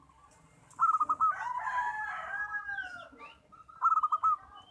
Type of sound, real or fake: real